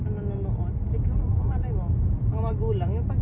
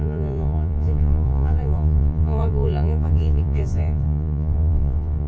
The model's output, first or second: second